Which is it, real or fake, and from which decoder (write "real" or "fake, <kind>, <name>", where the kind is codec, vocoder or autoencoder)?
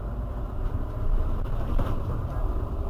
fake, vocoder, BigVGAN v2